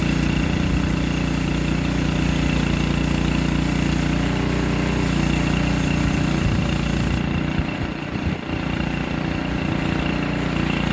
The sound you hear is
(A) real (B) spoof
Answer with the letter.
A